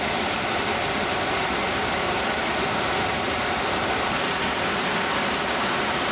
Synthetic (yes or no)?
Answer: no